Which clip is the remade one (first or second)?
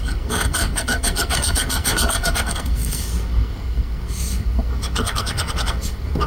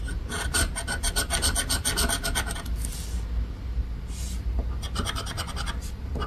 first